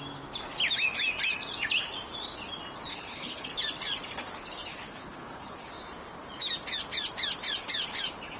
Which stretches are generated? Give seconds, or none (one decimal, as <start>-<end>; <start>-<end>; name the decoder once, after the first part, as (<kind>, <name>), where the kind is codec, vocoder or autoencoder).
2.9-3.5 (codec, HILCodec); 4.7-5.7